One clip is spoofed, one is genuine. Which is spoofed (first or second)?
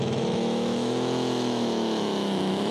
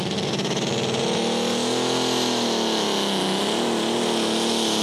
first